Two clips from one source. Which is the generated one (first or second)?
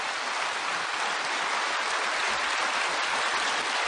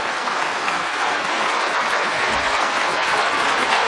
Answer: second